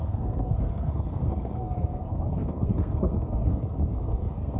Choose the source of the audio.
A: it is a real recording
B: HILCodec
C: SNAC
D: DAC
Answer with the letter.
C